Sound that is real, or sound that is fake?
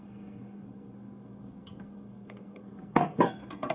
fake